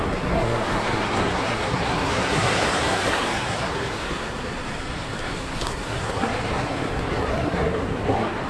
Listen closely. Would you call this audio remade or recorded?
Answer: remade